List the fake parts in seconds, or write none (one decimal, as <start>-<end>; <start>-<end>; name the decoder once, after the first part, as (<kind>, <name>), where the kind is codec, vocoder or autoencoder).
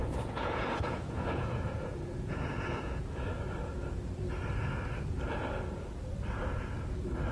0.0-3.0 (vocoder, Vocos)